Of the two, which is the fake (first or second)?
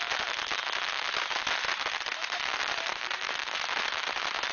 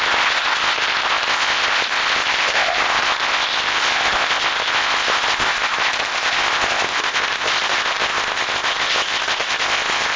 second